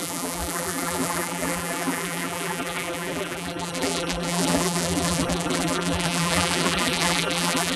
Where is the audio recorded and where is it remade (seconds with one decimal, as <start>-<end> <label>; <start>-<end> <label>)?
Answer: 0.0-7.8 remade